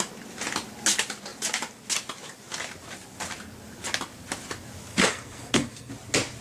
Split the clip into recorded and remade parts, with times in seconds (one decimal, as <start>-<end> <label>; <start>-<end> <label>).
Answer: 0.0-4.9 recorded; 4.9-5.9 remade; 5.9-6.4 recorded